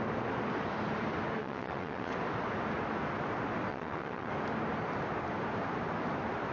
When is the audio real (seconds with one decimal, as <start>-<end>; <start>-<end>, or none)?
0.0-1.4; 2.1-3.7; 4.3-6.5